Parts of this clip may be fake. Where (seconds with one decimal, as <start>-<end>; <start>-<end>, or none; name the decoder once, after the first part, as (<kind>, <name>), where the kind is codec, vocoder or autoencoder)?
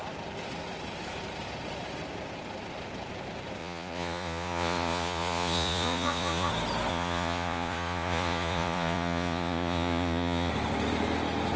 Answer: 3.6-6.5 (vocoder, Vocos); 6.9-10.5